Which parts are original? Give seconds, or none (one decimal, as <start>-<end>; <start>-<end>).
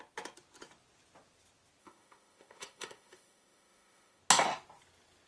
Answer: 0.0-1.8; 4.2-5.3